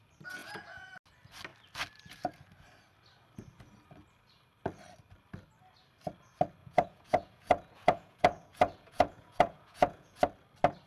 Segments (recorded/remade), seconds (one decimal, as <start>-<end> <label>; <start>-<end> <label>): 0.0-0.4 recorded; 0.4-0.9 remade; 0.9-6.6 recorded; 6.6-10.2 remade; 10.2-10.9 recorded